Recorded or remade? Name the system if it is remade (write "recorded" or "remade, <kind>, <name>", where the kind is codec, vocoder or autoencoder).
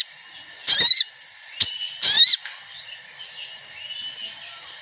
recorded